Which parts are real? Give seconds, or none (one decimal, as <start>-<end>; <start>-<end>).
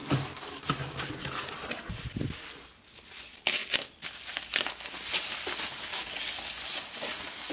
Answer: 1.1-5.9